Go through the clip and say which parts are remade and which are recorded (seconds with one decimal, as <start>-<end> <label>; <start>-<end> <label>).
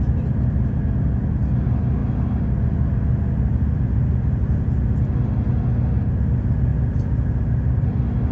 0.0-8.3 recorded